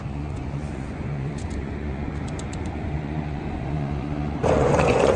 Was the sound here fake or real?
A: fake